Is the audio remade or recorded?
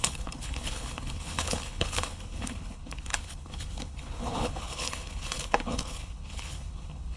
remade